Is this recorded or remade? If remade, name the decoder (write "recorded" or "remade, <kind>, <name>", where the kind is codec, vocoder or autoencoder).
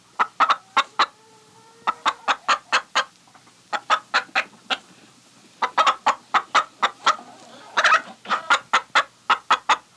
recorded